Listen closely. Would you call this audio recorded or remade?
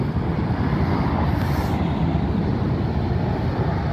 recorded